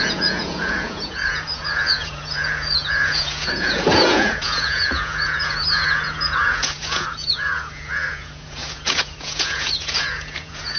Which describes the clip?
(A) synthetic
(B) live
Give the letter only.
A